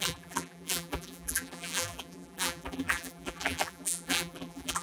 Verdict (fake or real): fake